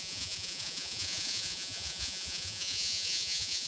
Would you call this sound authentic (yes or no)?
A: no